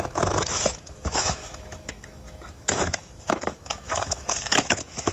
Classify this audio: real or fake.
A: fake